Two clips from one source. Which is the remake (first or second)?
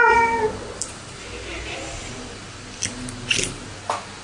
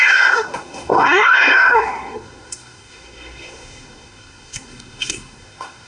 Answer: second